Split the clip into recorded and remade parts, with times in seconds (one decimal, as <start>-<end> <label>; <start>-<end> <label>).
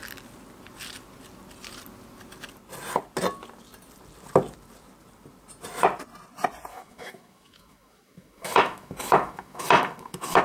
0.0-6.7 recorded; 6.7-10.4 remade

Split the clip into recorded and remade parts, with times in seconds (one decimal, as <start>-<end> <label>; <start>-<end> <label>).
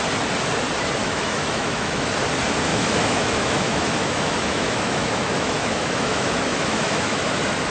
0.0-1.0 recorded; 1.0-2.1 remade; 2.1-2.7 recorded; 2.7-7.3 remade; 7.3-7.7 recorded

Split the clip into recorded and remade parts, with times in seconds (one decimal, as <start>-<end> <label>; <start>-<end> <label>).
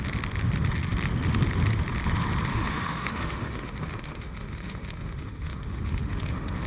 0.0-2.5 recorded; 2.5-6.7 remade